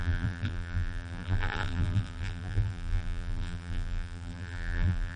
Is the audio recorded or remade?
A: remade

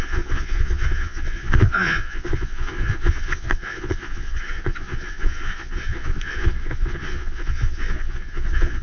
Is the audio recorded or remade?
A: remade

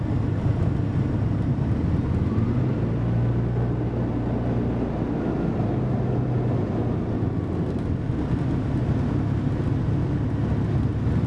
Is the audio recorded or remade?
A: recorded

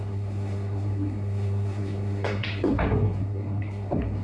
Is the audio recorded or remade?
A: remade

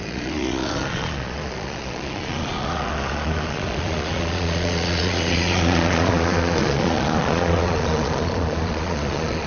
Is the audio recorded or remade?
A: remade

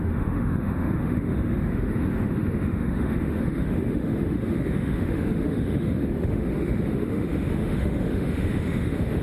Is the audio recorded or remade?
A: remade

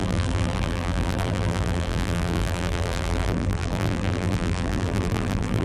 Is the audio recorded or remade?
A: remade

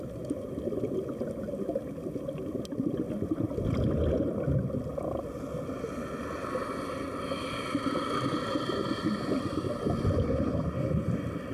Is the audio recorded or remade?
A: recorded